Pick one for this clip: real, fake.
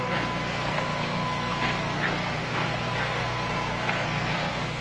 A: fake